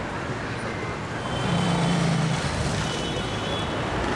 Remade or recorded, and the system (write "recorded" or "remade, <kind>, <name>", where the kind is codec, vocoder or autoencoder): remade, vocoder, BigVGAN v2